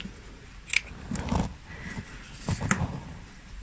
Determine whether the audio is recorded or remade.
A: recorded